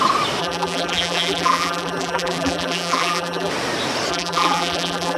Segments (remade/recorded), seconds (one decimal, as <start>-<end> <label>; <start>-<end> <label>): 0.0-0.4 recorded; 0.4-3.5 remade; 3.5-4.1 recorded; 4.1-5.2 remade